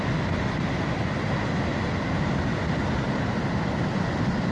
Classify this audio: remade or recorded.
recorded